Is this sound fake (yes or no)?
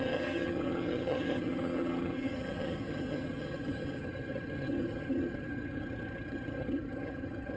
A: yes